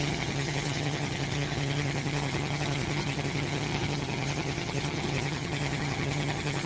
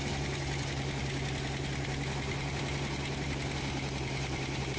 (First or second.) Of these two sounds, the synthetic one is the first